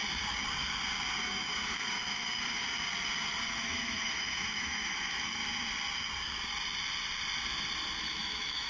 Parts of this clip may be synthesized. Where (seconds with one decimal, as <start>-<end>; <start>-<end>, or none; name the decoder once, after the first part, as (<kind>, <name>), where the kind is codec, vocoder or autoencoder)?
1.2-2.6 (autoencoder, DAC-VAE); 3.4-5.4; 8.0-8.7